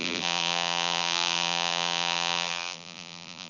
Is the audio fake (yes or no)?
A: yes